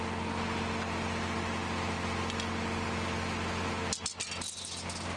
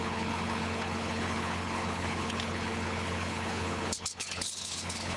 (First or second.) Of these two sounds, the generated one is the second